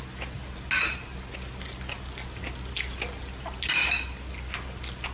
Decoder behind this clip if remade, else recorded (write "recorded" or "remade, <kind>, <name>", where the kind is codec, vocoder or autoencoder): recorded